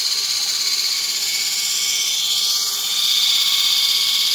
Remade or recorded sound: recorded